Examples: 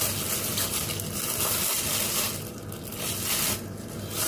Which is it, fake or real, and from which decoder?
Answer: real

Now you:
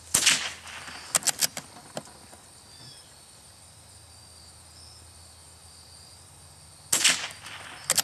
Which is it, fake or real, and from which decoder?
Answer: real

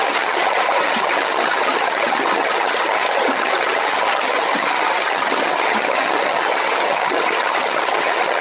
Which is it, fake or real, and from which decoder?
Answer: fake, vocoder, HiFi-GAN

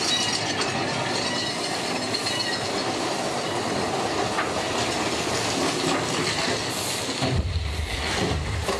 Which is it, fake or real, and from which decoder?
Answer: real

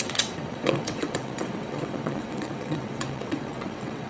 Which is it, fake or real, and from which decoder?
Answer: fake, vocoder, WaveNeXt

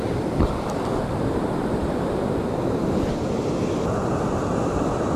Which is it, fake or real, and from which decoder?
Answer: real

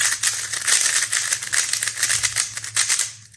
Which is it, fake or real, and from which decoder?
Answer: real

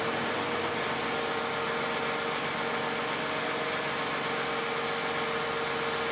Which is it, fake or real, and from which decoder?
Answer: real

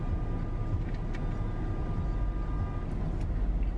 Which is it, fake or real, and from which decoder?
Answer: real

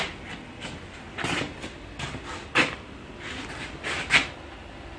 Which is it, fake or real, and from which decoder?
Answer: real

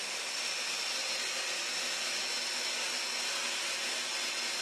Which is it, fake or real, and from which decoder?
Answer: real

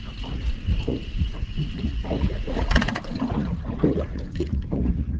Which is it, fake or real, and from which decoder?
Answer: fake, vocoder, Vocos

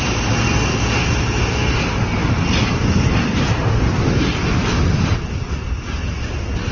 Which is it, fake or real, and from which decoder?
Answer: real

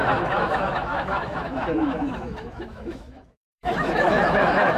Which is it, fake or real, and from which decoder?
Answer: fake, autoencoder, DAC-VAE